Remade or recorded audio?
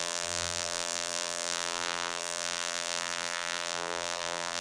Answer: remade